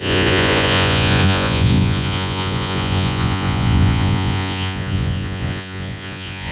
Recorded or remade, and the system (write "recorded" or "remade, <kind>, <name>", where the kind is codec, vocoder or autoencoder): remade, vocoder, Vocos